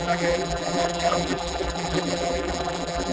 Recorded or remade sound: remade